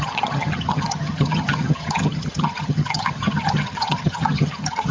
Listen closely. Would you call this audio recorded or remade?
remade